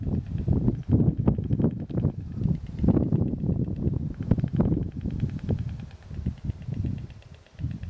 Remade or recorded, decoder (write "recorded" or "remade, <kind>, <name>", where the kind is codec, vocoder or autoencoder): recorded